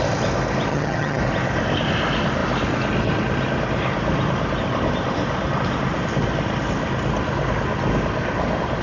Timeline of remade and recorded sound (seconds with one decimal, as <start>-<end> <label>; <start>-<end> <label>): 0.0-0.7 recorded; 0.7-1.2 remade; 1.2-8.8 recorded